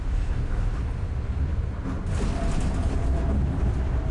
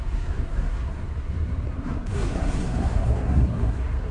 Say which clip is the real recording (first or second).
first